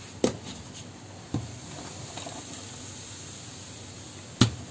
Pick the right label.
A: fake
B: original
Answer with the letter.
B